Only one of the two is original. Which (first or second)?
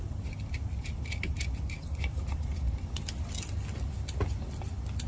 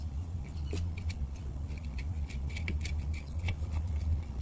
first